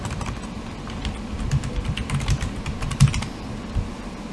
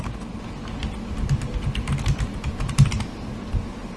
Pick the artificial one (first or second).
first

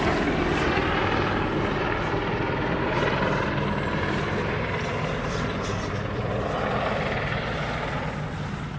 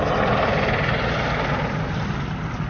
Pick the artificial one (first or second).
second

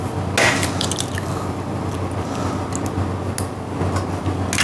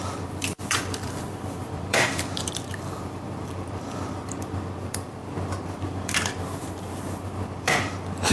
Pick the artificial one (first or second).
second